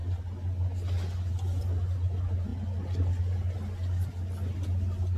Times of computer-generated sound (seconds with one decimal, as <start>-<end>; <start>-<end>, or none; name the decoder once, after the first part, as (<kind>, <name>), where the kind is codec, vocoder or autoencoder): none